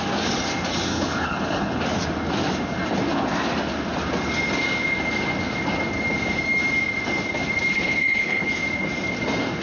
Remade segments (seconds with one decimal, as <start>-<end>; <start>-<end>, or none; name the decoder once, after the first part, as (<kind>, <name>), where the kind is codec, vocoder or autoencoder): 0.9-1.8 (codec, HILCodec); 7.7-8.6